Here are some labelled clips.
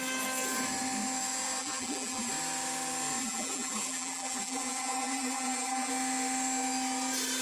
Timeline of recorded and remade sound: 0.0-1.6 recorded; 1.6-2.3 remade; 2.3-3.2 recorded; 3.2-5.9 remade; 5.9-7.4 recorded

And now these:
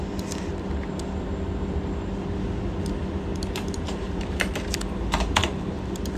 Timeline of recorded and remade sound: 0.0-3.3 recorded; 3.3-5.8 remade; 5.8-6.2 recorded

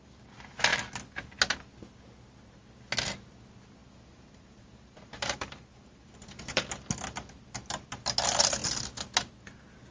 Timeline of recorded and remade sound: 0.0-3.8 recorded; 3.8-6.7 remade; 6.7-9.9 recorded

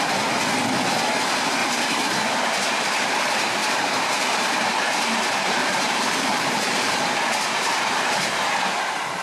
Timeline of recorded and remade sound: 0.0-1.6 recorded; 1.6-3.1 remade; 3.1-3.6 recorded; 3.6-8.3 remade; 8.3-9.2 recorded

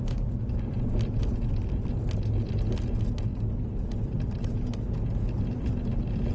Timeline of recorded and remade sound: 0.0-6.3 recorded

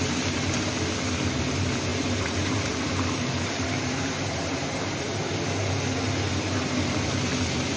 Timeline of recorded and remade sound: 0.0-1.9 recorded; 1.9-5.7 remade; 5.7-7.8 recorded

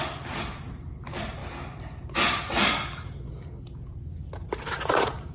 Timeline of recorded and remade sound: 0.0-1.4 remade; 1.4-4.6 recorded; 4.6-5.3 remade

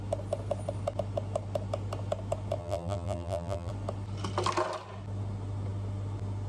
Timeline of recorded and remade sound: 0.0-2.6 recorded; 2.6-3.7 remade; 3.7-6.5 recorded